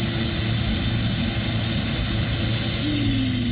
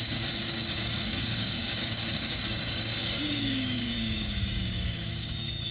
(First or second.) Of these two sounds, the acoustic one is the first